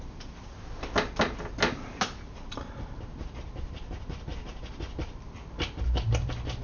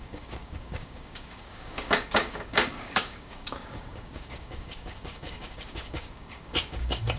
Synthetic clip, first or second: second